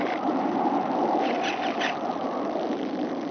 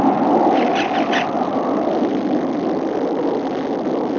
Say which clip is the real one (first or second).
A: second